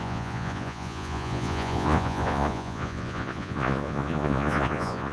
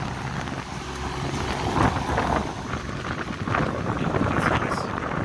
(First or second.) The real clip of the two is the second